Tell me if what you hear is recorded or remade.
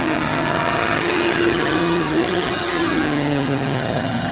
remade